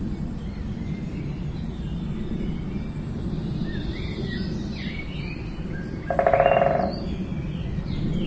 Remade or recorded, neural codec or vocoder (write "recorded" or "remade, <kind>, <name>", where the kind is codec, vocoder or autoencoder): recorded